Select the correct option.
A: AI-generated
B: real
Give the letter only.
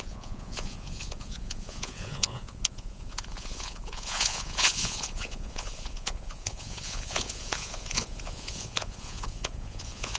A